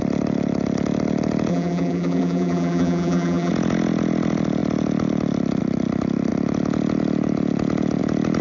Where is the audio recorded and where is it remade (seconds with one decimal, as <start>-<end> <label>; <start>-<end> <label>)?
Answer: 0.0-1.5 recorded; 1.5-3.5 remade; 3.5-8.4 recorded